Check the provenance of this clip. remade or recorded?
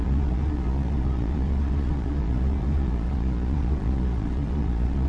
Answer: remade